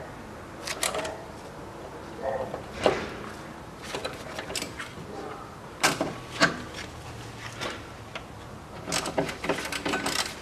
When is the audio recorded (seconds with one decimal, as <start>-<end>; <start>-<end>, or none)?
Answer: 0.0-10.4